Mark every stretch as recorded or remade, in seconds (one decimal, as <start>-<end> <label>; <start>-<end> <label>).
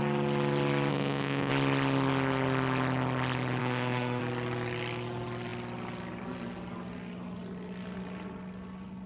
0.0-0.9 recorded; 0.9-1.5 remade; 1.5-3.6 recorded; 3.6-4.2 remade; 4.2-9.1 recorded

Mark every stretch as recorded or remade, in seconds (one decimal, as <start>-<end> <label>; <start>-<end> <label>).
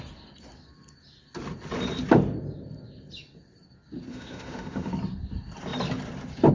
0.0-4.1 recorded; 4.1-4.9 remade; 4.9-6.5 recorded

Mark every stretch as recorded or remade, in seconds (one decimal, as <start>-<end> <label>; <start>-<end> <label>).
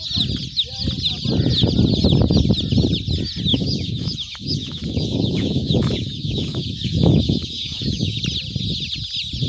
0.0-3.5 recorded; 3.5-8.2 remade; 8.2-9.5 recorded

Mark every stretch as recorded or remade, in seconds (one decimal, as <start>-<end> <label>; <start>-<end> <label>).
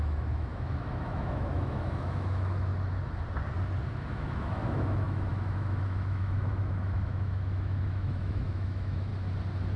0.0-2.7 remade; 2.7-4.0 recorded; 4.0-9.1 remade; 9.1-9.8 recorded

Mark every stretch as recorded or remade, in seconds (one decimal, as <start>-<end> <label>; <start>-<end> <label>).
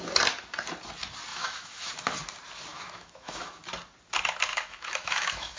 0.0-1.3 recorded; 1.3-1.9 remade; 1.9-2.7 recorded; 2.7-3.6 remade; 3.6-4.5 recorded; 4.5-5.6 remade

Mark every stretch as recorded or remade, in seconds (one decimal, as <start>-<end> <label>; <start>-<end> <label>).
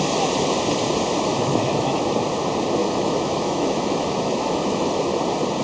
0.0-1.3 recorded; 1.3-2.1 remade; 2.1-2.8 recorded; 2.8-5.0 remade; 5.0-5.6 recorded